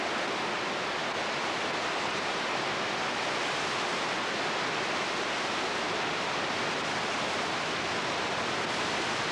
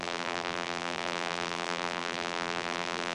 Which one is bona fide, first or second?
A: first